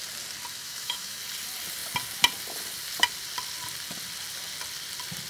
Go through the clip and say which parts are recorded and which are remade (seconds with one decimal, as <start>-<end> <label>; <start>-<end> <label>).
0.0-0.5 recorded; 0.5-1.2 remade; 1.2-5.3 recorded